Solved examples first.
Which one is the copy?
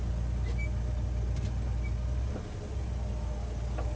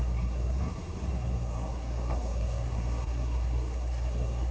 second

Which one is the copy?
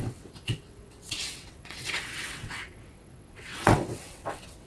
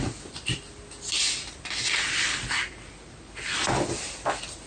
first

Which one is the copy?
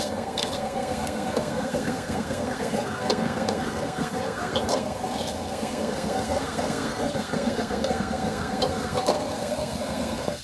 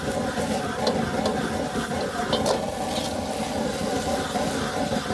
first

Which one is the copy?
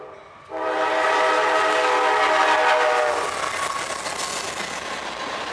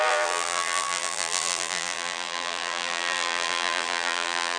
second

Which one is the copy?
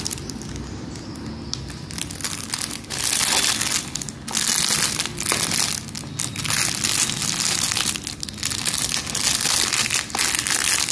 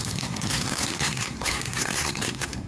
second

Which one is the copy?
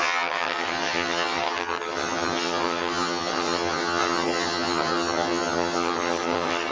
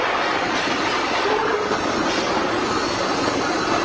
first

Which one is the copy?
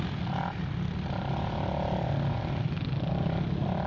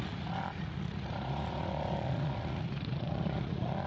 second